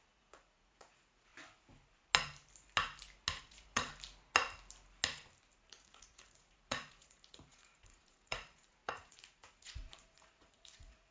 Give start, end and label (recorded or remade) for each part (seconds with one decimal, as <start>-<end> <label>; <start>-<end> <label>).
0.0-1.3 remade; 1.3-3.4 recorded; 3.4-3.9 remade; 3.9-5.6 recorded; 5.6-11.1 remade